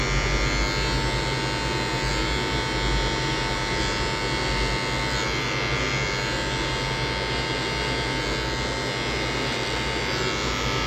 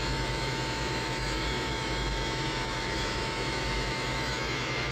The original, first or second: first